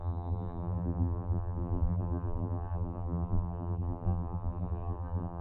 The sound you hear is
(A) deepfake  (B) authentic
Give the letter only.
A